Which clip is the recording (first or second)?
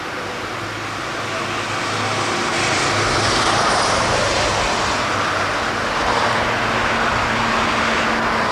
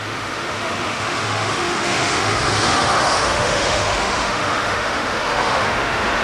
first